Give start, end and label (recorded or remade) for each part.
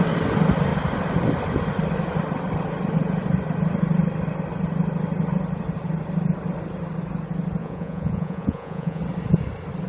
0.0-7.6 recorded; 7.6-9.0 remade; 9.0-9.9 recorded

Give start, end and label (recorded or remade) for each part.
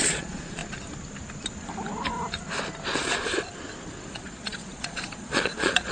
0.0-0.6 remade; 0.6-4.1 recorded; 4.1-5.9 remade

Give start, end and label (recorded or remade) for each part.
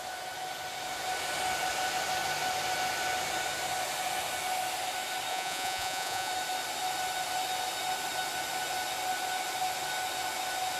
0.0-5.3 recorded; 5.3-6.3 remade; 6.3-10.8 recorded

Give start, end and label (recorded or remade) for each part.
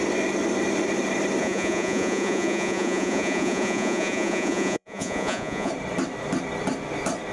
0.0-1.4 recorded; 1.4-5.7 remade; 5.7-7.3 recorded